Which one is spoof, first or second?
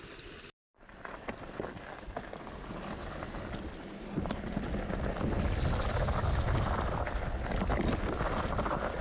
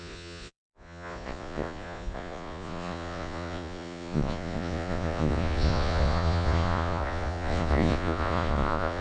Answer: second